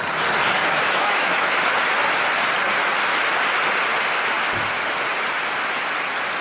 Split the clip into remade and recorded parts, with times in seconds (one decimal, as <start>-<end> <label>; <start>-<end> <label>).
0.0-0.6 recorded; 0.6-1.7 remade; 1.7-6.4 recorded